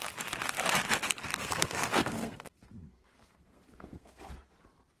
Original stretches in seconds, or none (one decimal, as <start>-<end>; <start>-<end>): 0.0-1.3; 4.3-5.0